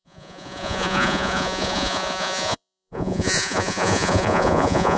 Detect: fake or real fake